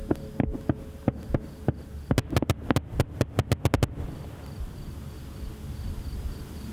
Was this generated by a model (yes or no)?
no